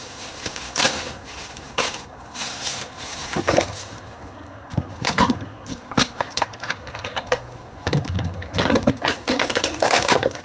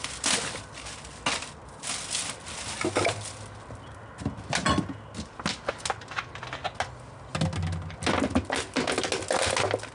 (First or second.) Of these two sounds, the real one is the second